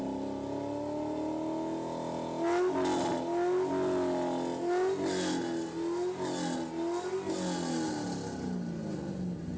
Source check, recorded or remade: recorded